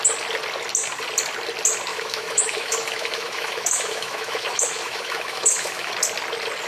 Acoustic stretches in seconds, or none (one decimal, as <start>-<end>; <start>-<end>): 0.0-1.9; 5.9-6.7